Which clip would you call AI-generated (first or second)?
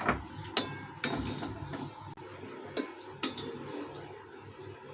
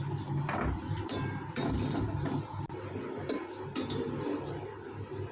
second